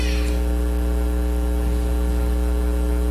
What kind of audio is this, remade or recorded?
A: recorded